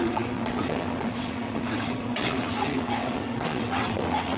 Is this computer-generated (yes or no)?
yes